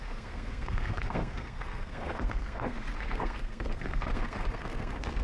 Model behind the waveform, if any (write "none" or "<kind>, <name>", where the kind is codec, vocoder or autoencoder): codec, SNAC